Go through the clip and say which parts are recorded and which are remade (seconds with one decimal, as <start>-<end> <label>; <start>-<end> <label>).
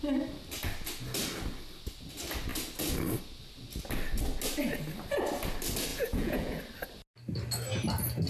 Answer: 0.0-5.9 recorded; 5.9-6.6 remade; 6.6-8.3 recorded